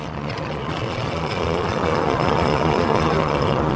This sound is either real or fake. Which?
fake